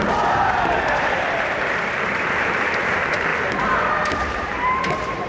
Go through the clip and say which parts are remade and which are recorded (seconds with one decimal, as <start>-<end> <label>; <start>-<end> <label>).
0.0-3.3 remade; 3.3-4.1 recorded; 4.1-5.3 remade